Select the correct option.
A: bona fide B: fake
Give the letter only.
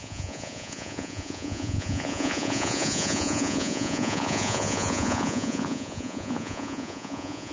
B